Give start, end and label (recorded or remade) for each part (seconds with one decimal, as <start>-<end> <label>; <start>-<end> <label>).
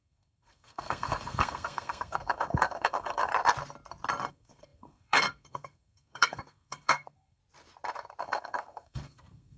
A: 0.0-3.3 remade; 3.3-4.3 recorded; 4.3-7.4 remade; 7.4-8.2 recorded; 8.2-9.6 remade